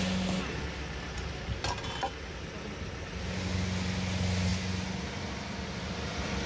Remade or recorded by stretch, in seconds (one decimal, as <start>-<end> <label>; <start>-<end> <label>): 0.0-6.5 recorded